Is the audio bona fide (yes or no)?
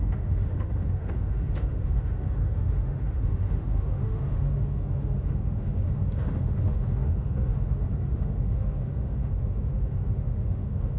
no